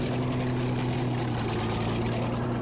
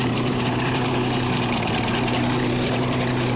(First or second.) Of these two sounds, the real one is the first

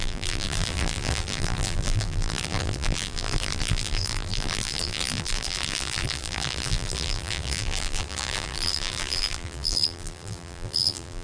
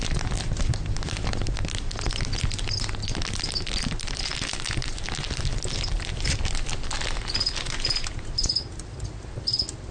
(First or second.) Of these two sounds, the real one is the second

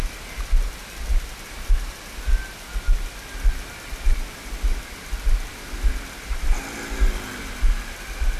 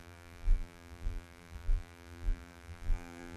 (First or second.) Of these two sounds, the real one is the first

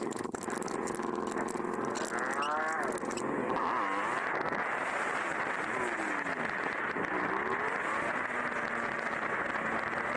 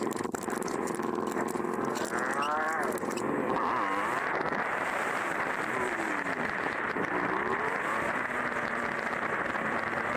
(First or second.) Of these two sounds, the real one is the first